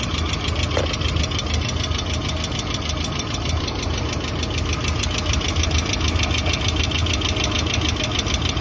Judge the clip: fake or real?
real